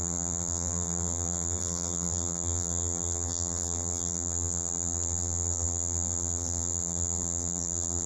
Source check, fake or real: fake